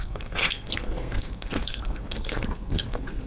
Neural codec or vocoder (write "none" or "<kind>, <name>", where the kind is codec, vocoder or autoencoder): codec, SNAC